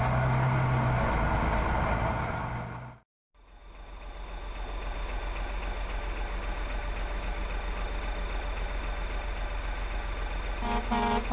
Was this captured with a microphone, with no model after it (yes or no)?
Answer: yes